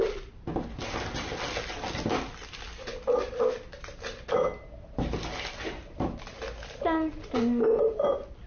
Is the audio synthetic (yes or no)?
no